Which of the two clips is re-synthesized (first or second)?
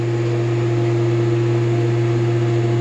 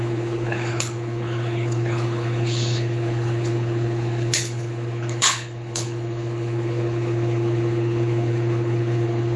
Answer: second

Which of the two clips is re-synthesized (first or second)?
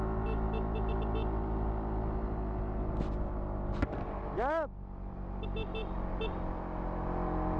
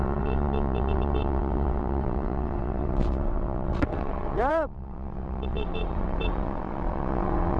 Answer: second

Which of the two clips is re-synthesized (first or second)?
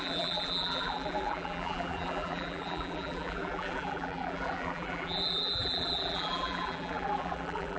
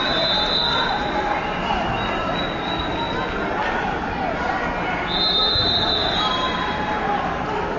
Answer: first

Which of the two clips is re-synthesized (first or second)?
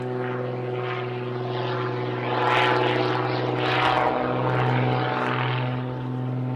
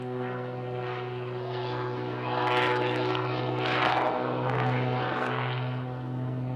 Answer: second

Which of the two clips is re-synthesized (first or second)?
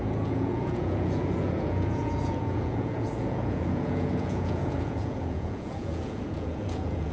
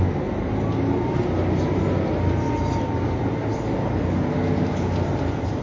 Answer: first